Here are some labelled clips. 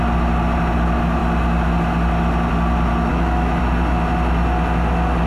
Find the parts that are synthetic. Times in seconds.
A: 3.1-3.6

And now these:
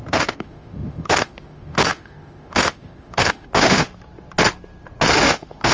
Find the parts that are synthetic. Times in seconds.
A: 0.0-3.9; 5.1-5.7

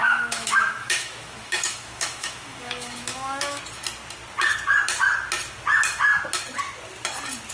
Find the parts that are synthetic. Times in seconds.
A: 0.0-3.6

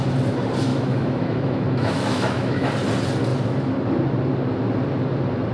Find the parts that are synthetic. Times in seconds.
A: 0.7-2.7

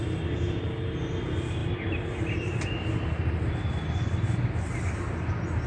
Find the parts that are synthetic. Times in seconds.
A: none

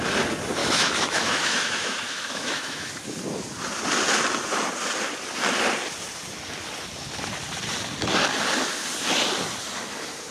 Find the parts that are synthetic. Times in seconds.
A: 0.6-2.9

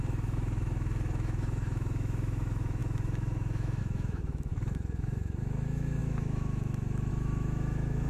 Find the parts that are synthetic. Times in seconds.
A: 0.0-8.1

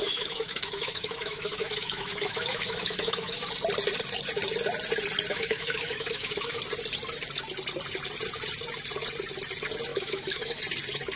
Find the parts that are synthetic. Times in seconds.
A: 0.0-3.5; 5.3-6.6; 9.9-10.6